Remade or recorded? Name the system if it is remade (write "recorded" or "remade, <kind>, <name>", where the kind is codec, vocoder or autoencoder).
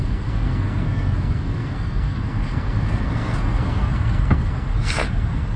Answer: remade, codec, SNAC